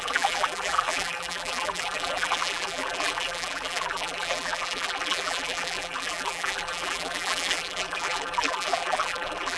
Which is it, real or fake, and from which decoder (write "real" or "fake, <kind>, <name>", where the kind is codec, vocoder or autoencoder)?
fake, vocoder, BigVGAN v2